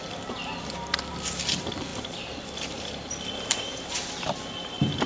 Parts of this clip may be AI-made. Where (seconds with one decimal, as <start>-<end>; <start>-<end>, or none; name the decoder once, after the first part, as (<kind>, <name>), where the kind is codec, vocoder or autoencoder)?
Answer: 0.0-5.1 (vocoder, BigVGAN v2)